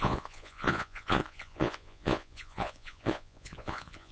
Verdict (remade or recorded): remade